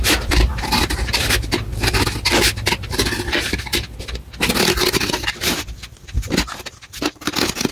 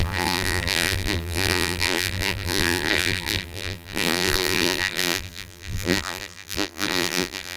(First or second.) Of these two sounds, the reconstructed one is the second